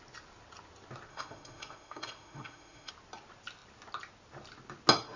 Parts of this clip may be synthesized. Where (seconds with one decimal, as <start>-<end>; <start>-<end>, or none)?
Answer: 1.1-2.9